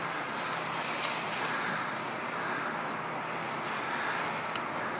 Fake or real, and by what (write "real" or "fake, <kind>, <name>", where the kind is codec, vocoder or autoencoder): real